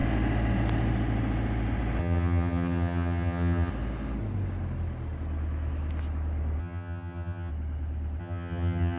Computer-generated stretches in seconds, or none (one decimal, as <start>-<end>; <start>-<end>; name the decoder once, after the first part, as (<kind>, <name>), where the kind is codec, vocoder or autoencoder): 2.0-3.7 (vocoder, HiFi-GAN); 6.6-7.5; 8.2-9.0